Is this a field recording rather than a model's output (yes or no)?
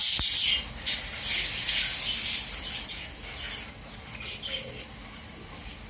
yes